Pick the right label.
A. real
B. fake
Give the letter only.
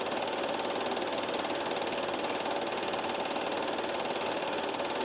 A